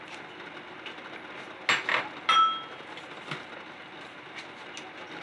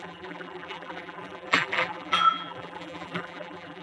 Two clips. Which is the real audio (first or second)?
first